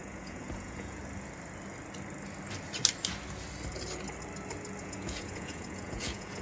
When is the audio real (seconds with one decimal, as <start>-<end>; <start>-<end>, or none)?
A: 1.0-4.8